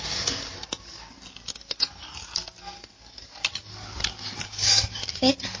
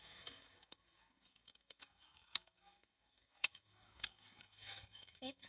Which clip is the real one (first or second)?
first